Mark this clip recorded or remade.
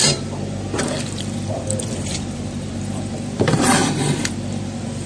remade